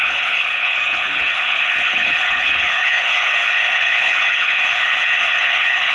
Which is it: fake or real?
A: fake